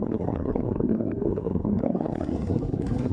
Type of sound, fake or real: fake